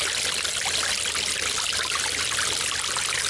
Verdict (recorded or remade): recorded